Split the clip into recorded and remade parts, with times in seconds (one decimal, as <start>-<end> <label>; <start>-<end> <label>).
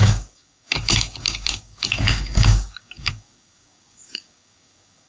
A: 0.0-5.1 remade